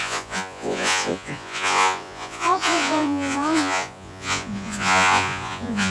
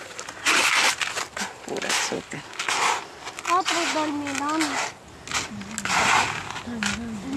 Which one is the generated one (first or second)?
first